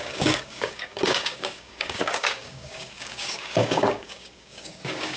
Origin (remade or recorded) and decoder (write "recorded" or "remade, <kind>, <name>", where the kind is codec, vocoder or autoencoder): remade, codec, DAC